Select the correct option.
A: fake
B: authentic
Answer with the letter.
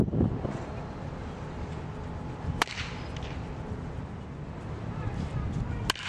B